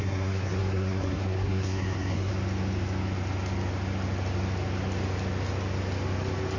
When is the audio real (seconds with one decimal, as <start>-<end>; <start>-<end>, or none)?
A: 2.3-6.6